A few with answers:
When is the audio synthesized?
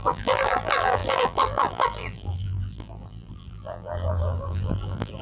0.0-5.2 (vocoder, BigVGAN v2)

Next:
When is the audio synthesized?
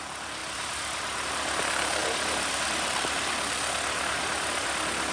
0.4-1.3 (vocoder, BigVGAN v2); 2.0-5.1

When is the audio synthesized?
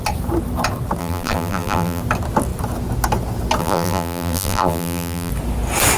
1.0-2.0 (vocoder, BigVGAN v2); 3.6-5.3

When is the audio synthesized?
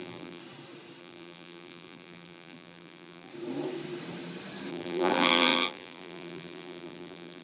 0.0-0.4 (vocoder, BigVGAN v2); 1.0-3.3; 4.7-7.4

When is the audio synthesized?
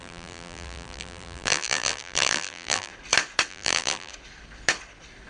0.0-2.9 (vocoder, BigVGAN v2); 3.5-4.1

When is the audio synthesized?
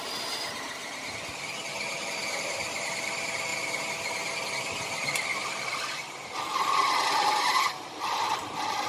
0.0-0.8 (vocoder, BigVGAN v2); 1.4-3.5; 4.6-5.3; 6.4-8.9